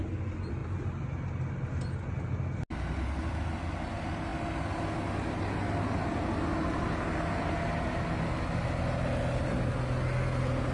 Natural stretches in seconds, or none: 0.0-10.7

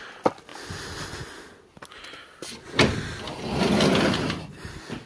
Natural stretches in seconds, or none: 0.0-5.1

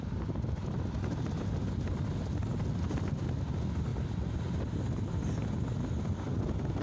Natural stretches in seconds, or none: 0.0-6.8